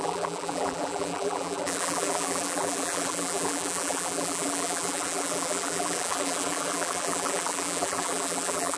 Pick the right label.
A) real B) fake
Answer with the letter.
B